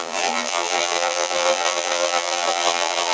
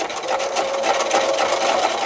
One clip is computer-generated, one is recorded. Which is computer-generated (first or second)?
first